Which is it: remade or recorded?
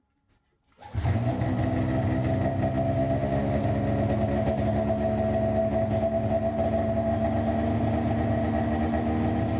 recorded